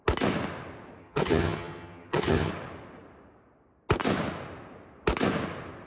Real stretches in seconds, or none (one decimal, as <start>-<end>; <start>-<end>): 0.0-1.0; 2.5-5.9